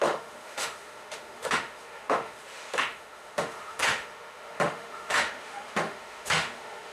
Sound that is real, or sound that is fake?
fake